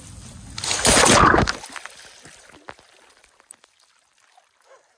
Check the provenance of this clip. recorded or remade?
recorded